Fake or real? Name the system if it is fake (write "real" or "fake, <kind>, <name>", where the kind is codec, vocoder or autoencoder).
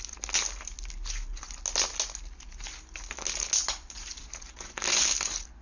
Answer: real